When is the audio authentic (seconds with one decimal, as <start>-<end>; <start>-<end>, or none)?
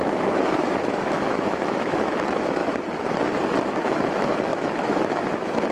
2.6-3.7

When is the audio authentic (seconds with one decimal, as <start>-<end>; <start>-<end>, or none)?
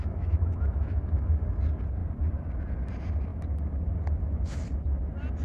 1.4-5.4